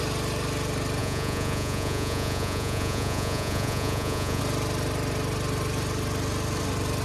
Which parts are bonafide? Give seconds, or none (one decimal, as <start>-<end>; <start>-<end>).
0.0-1.0; 4.4-7.0